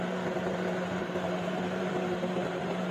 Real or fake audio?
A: fake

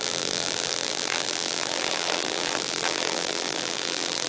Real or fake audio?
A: fake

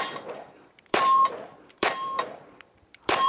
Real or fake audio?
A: fake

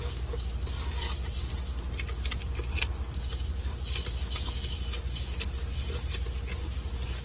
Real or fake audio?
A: real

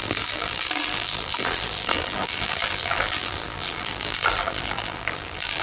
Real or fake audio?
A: fake